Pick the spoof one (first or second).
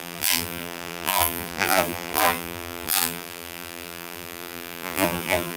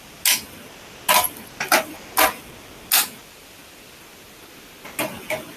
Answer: first